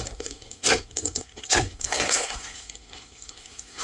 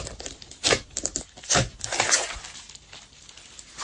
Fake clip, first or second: first